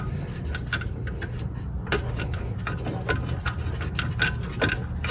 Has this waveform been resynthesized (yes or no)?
no